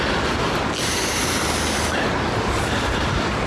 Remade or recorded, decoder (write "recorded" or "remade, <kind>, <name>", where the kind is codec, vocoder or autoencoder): recorded